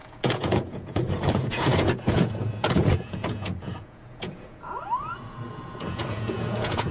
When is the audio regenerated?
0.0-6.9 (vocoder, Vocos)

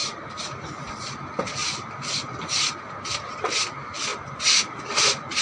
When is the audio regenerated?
0.9-5.4 (vocoder, BigVGAN v2)

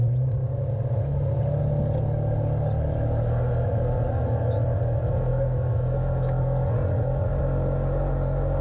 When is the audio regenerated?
5.3-6.4 (autoencoder, DAC-VAE)

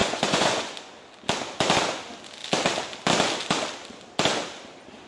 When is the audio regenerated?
0.0-1.0 (vocoder, Vocos)